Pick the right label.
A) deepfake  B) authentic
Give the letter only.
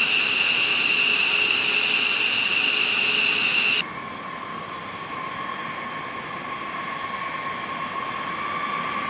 B